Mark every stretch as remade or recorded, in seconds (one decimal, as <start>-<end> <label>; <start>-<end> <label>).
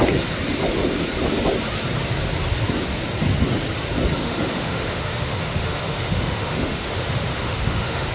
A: 0.0-4.2 recorded; 4.2-8.1 remade